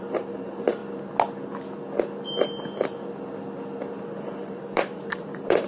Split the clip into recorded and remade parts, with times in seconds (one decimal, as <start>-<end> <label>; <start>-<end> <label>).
0.0-0.8 remade; 0.8-4.2 recorded; 4.2-5.7 remade